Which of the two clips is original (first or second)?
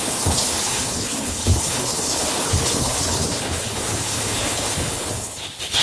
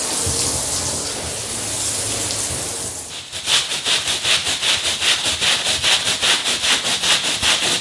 second